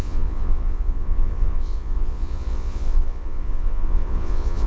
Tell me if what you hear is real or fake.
fake